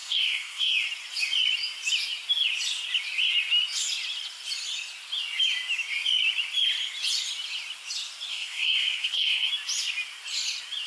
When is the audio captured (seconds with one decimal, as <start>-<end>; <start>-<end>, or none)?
0.7-8.3; 9.5-10.9